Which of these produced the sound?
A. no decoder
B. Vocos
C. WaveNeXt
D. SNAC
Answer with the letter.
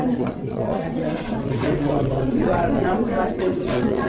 C